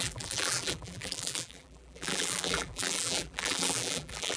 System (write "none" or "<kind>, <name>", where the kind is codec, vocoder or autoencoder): vocoder, BigVGAN v2